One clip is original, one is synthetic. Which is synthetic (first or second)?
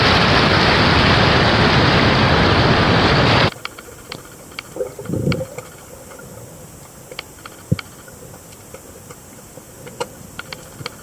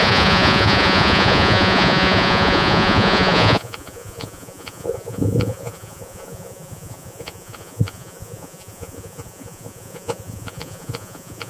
second